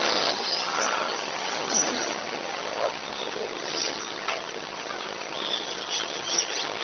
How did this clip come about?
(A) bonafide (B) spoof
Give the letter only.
B